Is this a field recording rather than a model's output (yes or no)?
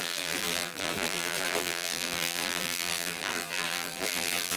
no